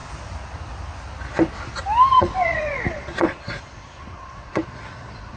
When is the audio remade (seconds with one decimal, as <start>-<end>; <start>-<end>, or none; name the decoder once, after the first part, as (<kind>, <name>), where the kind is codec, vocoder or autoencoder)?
2.2-5.4 (vocoder, Vocos)